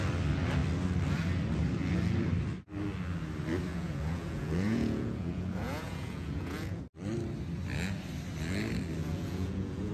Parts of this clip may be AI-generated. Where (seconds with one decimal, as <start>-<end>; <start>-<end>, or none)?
3.7-6.8; 9.0-9.9